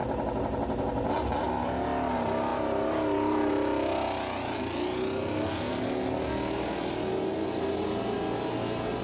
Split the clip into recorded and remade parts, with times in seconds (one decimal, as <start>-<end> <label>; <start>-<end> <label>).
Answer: 0.0-9.0 recorded